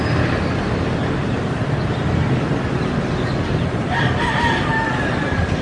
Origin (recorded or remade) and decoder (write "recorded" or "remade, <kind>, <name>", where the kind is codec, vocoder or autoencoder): recorded